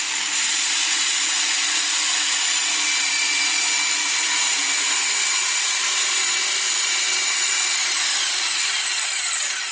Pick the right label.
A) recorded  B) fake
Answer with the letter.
B